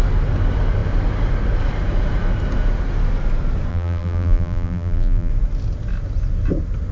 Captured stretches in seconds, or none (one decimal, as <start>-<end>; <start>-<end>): 0.0-3.7; 5.3-6.9